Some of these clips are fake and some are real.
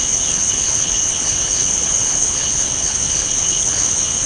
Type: fake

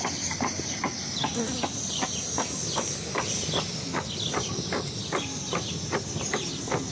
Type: real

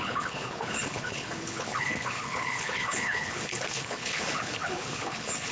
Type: fake